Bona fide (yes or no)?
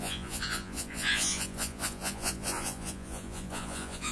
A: no